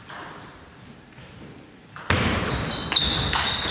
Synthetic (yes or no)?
no